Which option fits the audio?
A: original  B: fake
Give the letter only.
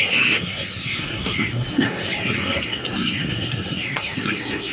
B